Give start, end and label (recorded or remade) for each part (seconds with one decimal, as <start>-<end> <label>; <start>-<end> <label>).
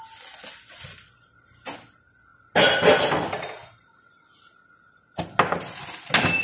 0.0-6.4 recorded